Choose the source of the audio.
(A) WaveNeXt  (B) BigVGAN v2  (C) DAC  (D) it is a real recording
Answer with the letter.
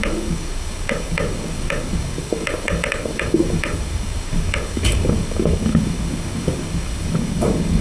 C